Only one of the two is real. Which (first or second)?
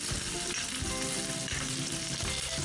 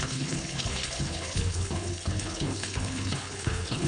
first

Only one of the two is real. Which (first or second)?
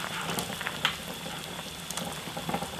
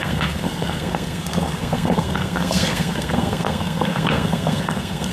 first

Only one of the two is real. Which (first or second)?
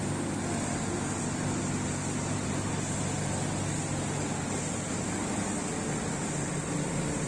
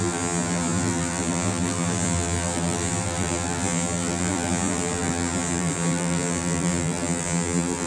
first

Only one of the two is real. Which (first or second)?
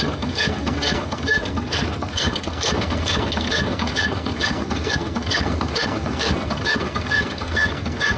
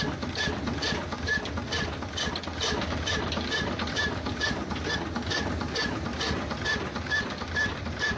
second